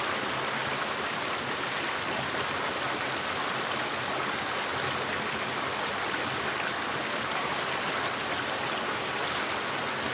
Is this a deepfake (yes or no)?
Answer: no